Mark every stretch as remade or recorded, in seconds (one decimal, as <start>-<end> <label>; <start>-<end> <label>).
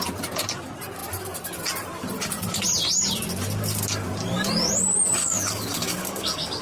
0.0-5.2 recorded; 5.2-6.6 remade